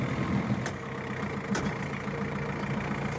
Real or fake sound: real